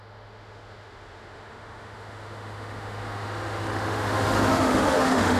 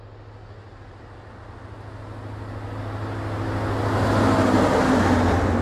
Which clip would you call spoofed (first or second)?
first